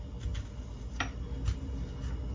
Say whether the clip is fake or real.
real